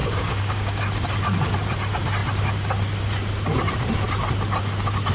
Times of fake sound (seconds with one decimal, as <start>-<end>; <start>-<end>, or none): 0.0-0.8